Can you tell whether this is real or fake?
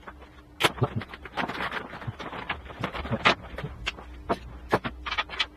real